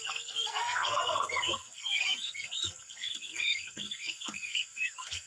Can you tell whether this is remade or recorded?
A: remade